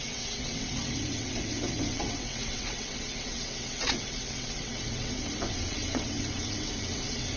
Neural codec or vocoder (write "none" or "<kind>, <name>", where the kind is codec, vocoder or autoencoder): vocoder, WaveNeXt